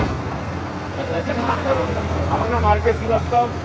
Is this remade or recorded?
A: remade